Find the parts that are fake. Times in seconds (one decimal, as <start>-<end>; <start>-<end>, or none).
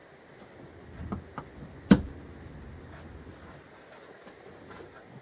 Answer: none